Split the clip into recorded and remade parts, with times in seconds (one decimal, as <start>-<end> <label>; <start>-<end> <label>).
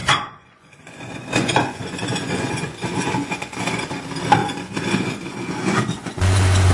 0.0-4.0 remade; 4.0-4.4 recorded; 4.4-6.7 remade